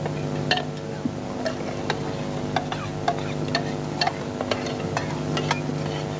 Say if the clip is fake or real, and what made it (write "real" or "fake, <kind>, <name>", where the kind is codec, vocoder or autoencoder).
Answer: real